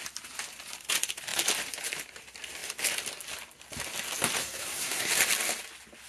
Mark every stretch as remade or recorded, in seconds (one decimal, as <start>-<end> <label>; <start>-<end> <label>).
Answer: 0.0-4.4 recorded; 4.4-5.1 remade; 5.1-6.1 recorded